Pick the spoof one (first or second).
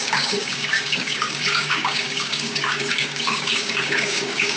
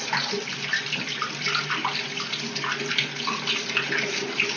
first